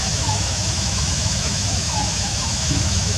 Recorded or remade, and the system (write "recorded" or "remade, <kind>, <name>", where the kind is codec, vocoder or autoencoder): remade, autoencoder, DAC-VAE